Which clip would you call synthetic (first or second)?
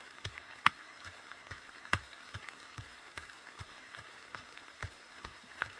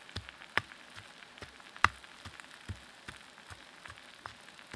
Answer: first